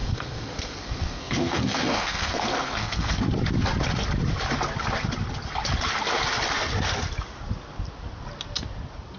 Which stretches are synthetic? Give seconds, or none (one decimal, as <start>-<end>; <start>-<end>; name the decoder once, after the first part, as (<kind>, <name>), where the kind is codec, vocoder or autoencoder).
0.0-3.2 (codec, SNAC)